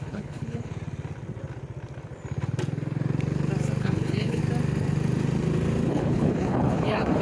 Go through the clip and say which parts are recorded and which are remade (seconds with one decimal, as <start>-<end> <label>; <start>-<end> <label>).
0.0-0.7 remade; 0.7-3.8 recorded; 3.8-4.4 remade; 4.4-5.9 recorded; 5.9-7.2 remade